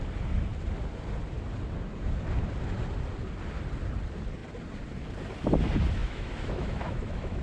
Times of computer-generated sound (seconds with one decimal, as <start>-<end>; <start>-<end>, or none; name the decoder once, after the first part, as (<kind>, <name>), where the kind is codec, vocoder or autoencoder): 6.0-7.4 (autoencoder, DAC-VAE)